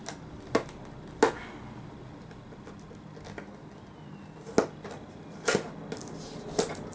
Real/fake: real